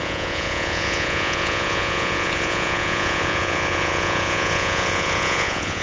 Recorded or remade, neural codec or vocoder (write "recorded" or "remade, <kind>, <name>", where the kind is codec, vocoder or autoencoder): remade, vocoder, Vocos